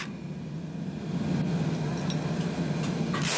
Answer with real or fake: real